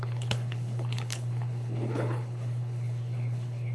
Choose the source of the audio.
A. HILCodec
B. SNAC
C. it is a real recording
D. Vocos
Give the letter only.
A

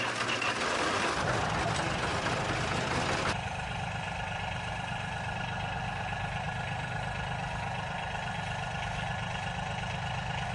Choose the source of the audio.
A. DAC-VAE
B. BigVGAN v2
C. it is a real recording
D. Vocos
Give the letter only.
C